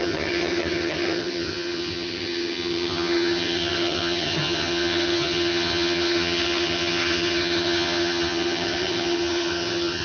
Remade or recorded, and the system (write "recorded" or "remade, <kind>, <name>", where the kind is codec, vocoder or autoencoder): remade, vocoder, HiFi-GAN